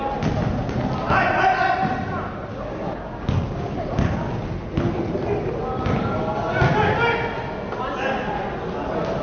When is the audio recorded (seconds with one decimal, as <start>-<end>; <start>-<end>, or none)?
0.0-2.5; 4.6-9.2